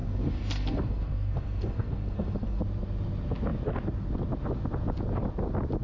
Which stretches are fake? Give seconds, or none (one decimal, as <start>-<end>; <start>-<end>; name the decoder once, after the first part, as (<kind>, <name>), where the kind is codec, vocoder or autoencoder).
0.0-2.6 (codec, SNAC)